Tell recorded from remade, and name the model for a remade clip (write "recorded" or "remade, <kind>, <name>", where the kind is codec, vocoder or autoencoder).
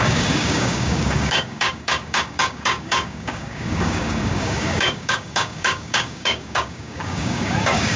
remade, codec, DAC